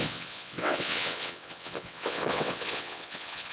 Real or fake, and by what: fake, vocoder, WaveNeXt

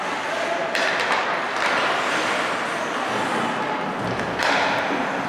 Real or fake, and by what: real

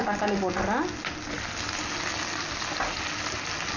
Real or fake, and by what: real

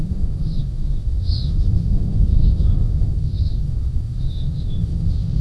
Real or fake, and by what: fake, autoencoder, DAC-VAE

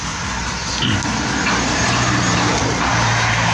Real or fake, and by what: real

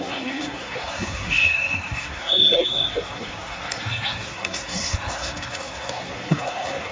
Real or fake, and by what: fake, codec, SNAC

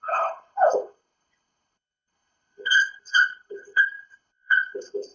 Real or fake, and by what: fake, codec, HILCodec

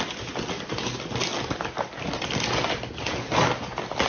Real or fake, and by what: real